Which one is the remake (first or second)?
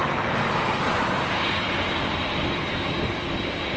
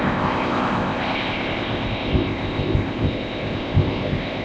second